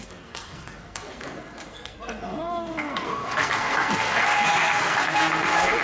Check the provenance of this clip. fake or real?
fake